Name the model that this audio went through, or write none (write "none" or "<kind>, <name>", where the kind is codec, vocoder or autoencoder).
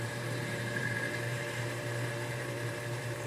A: vocoder, BigVGAN v2